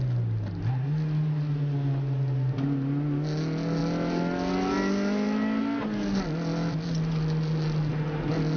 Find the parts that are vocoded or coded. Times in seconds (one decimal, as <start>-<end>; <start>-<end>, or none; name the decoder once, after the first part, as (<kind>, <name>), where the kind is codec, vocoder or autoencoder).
none